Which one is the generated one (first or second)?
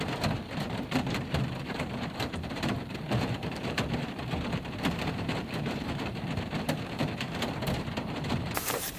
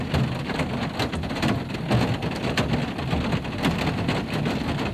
first